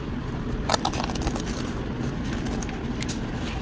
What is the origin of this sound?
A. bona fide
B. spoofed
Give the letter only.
A